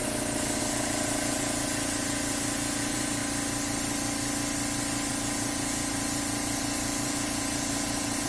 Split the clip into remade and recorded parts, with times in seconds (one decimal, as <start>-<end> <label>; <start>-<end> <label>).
0.0-0.6 recorded; 0.6-3.2 remade; 3.2-5.1 recorded; 5.1-8.3 remade